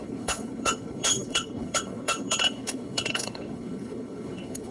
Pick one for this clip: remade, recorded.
remade